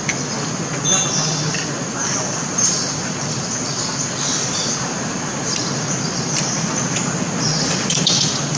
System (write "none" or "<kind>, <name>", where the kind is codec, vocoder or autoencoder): none